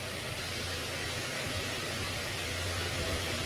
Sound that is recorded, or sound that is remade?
recorded